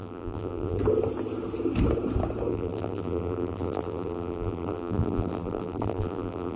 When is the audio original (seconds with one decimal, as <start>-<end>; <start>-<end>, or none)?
0.8-2.5